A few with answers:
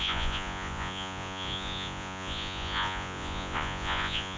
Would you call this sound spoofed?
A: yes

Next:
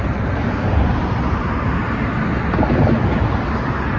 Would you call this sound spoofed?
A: no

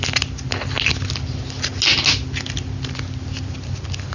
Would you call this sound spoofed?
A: no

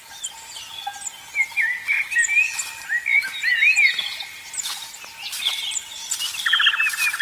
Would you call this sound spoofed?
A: no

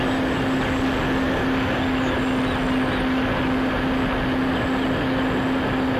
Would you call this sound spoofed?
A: no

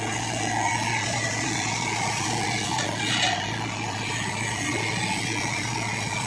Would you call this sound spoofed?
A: yes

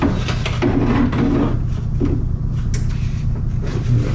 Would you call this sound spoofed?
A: no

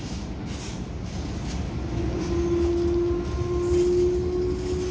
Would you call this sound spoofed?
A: no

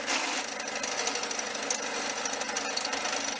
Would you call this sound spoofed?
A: no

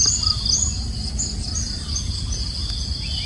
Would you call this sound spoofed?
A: no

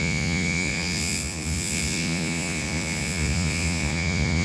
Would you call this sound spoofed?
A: yes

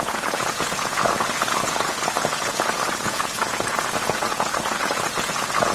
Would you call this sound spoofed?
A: yes